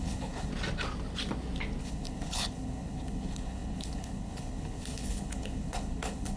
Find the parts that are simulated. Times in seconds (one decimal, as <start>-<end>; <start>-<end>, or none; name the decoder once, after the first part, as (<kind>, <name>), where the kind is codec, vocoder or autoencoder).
0.0-0.5 (codec, HILCodec); 1.8-6.4